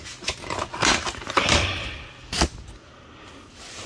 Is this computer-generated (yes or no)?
no